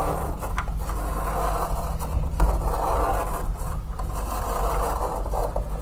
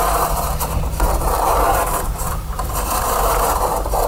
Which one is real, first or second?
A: first